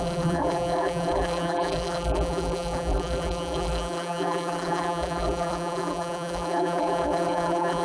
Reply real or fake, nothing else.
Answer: fake